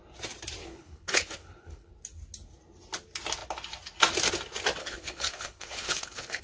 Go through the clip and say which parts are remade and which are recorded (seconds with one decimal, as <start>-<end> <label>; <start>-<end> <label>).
0.0-0.6 recorded; 0.6-1.9 remade; 1.9-4.8 recorded; 4.8-6.4 remade